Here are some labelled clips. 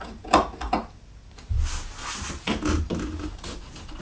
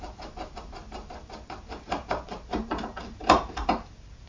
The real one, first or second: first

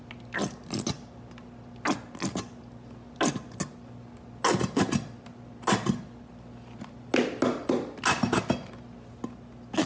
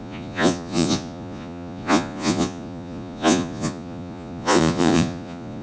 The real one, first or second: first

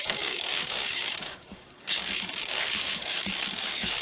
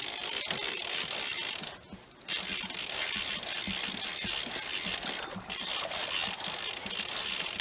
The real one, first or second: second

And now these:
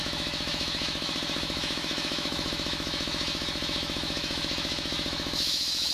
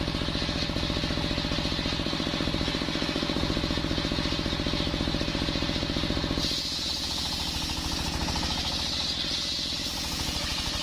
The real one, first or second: second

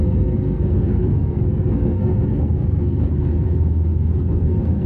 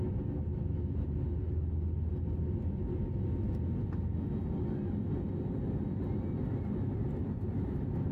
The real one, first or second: second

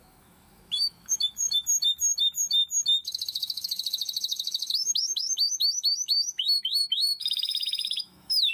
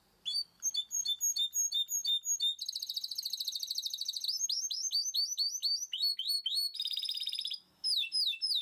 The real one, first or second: second